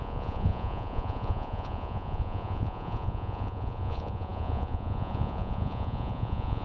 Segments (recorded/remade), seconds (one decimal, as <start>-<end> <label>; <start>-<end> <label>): 0.0-6.6 remade